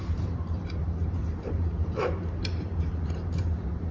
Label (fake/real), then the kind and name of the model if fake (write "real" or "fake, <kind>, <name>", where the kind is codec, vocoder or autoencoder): fake, vocoder, BigVGAN v2